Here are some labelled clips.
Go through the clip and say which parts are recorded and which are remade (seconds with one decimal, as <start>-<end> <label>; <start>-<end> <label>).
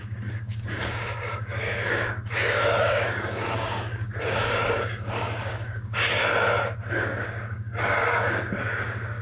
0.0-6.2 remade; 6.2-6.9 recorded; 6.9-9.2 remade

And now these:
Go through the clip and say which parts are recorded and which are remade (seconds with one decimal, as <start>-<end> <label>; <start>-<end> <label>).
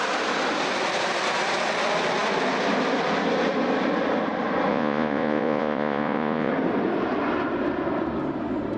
0.0-4.7 recorded; 4.7-6.5 remade; 6.5-8.8 recorded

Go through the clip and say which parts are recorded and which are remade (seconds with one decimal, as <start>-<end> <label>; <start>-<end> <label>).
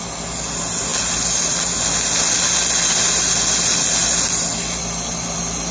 0.0-5.7 recorded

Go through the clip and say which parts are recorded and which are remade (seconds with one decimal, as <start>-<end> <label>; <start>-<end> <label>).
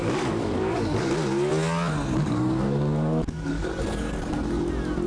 0.0-1.1 remade; 1.1-2.2 recorded; 2.2-3.7 remade; 3.7-5.1 recorded